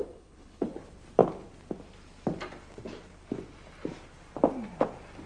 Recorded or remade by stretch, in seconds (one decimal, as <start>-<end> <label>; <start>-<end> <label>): 0.0-0.7 remade; 0.7-5.3 recorded